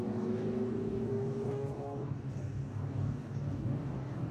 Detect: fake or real fake